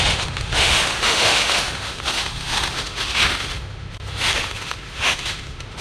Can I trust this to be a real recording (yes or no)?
no